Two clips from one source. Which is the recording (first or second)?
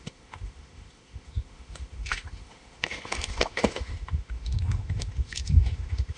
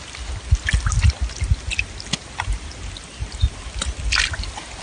second